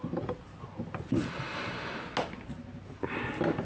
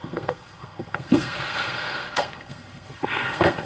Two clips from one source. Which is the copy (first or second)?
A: second